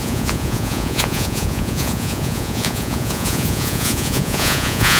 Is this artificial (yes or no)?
yes